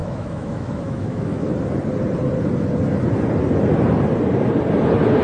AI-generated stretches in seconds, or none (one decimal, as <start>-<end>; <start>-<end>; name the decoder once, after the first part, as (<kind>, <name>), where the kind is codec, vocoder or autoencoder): 0.0-1.5 (autoencoder, DAC-VAE)